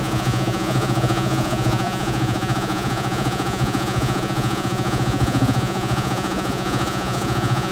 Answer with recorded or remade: remade